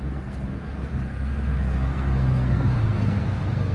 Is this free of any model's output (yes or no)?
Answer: no